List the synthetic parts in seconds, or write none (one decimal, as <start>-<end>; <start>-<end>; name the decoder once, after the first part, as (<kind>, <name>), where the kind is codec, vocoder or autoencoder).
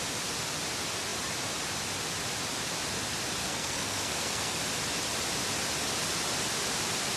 3.4-4.6 (codec, SNAC)